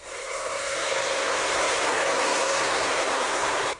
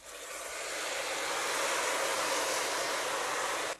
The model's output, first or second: first